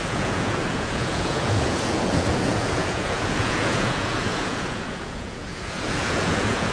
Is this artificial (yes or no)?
yes